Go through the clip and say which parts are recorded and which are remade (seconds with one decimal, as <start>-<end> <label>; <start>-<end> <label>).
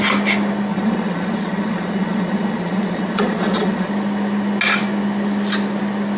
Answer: 0.0-0.7 recorded; 0.7-3.9 remade; 3.9-6.2 recorded